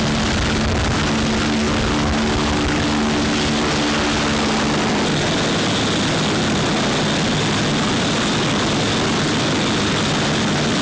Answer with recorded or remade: recorded